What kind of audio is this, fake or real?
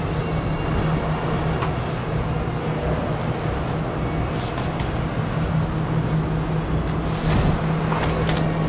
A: real